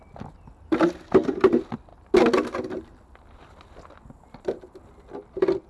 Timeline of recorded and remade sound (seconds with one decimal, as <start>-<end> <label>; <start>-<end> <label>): 0.0-5.7 recorded